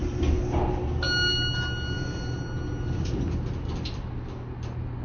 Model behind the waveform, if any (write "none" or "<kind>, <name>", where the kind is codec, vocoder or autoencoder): none